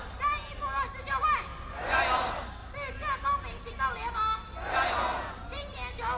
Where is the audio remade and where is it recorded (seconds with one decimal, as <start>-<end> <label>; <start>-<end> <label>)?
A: 0.0-1.5 recorded; 1.5-2.0 remade; 2.0-6.2 recorded